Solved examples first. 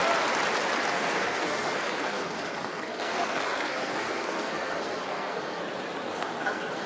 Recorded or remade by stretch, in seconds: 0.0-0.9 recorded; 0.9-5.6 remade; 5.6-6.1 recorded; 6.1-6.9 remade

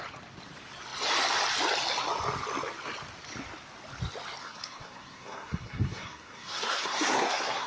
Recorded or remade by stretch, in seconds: 0.0-4.4 recorded; 4.4-7.7 remade

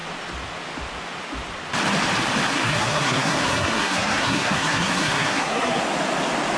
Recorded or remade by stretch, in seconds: 0.0-2.5 recorded; 2.5-5.8 remade; 5.8-6.6 recorded

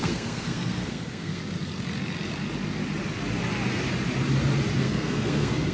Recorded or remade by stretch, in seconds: 0.0-1.4 remade; 1.4-4.8 recorded; 4.8-5.7 remade

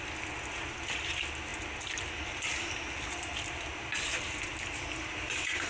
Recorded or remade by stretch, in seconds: 0.0-5.7 recorded

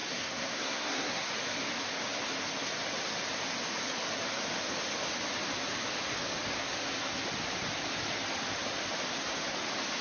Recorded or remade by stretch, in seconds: 0.0-1.3 remade; 1.3-10.0 recorded

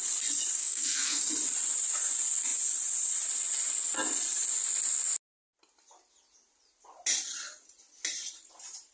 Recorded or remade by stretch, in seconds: 0.0-0.6 recorded; 0.6-1.2 remade; 1.2-8.9 recorded